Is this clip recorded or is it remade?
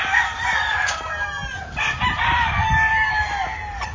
recorded